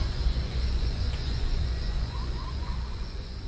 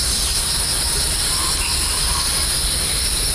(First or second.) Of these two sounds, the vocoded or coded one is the first